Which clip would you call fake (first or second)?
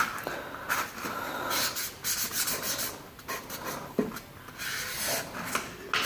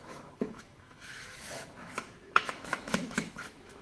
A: second